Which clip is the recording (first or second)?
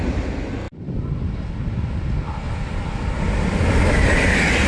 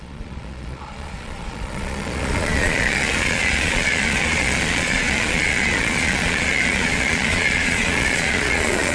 first